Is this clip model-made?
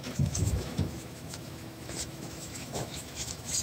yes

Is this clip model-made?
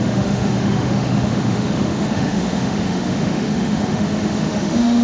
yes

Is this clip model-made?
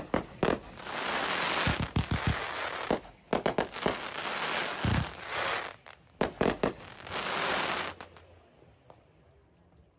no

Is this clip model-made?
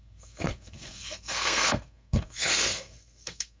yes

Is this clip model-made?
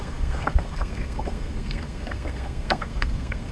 yes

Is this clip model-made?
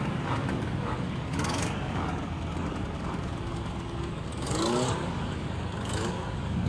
yes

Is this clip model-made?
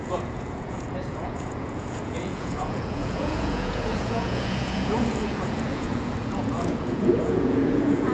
yes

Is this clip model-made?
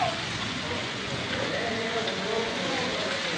yes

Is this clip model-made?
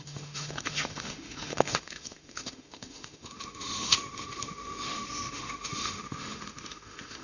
yes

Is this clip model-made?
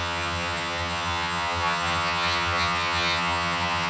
yes